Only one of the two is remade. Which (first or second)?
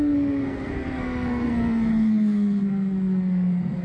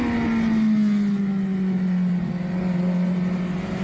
first